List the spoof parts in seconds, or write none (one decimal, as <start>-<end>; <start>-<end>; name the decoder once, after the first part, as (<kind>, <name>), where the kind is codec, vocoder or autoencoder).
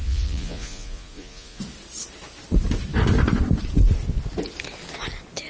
0.0-1.6 (vocoder, Vocos)